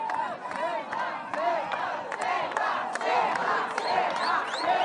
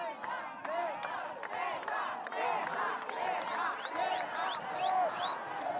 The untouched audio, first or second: second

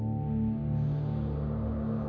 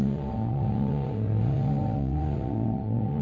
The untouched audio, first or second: first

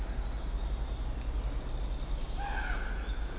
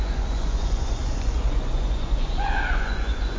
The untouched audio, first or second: first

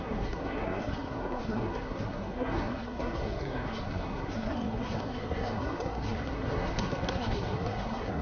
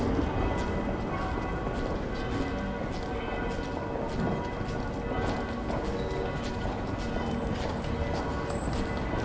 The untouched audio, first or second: second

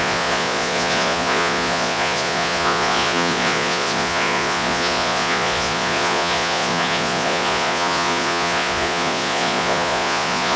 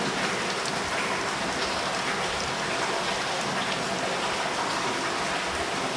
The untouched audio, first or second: second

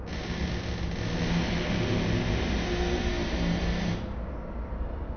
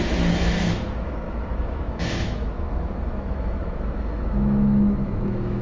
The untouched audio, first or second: first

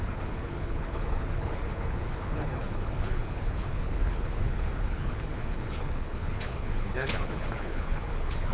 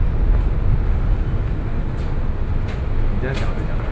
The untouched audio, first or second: second